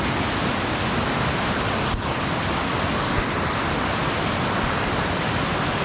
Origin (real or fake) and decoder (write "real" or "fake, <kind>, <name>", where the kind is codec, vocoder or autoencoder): real